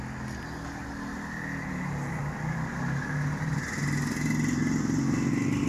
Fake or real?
real